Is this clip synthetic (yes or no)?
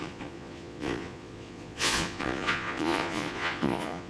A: yes